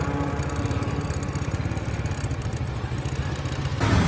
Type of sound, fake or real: real